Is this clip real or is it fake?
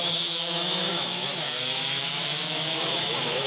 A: fake